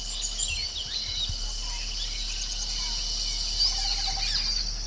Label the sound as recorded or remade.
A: recorded